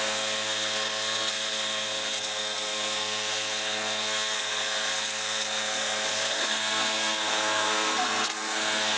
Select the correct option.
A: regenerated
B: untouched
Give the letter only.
A